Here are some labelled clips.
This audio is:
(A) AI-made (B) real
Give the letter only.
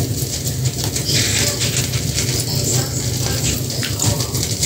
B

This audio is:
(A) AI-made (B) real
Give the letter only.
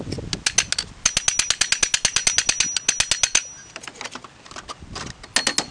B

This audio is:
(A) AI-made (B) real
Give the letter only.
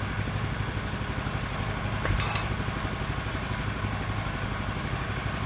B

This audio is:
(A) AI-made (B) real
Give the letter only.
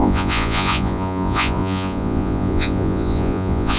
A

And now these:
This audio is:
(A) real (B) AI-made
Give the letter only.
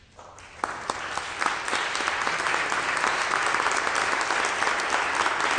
A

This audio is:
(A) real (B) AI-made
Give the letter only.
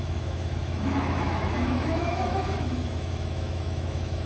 B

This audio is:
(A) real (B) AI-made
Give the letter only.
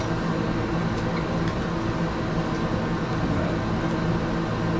A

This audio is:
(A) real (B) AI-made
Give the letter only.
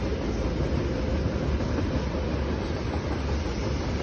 A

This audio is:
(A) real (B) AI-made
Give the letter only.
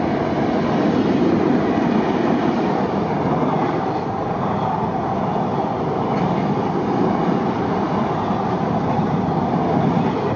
A